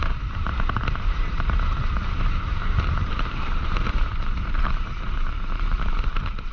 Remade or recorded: remade